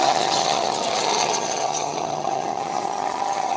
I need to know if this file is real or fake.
fake